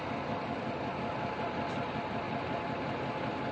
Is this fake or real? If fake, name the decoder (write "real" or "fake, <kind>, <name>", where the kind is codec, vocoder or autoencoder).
real